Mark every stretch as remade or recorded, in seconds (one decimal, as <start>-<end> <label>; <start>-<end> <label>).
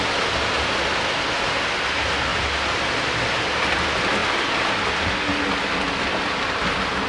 0.0-2.3 recorded; 2.3-3.8 remade; 3.8-7.1 recorded